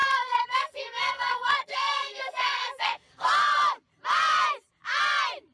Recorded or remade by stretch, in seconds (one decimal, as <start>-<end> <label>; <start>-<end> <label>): 0.0-3.3 remade; 3.3-5.5 recorded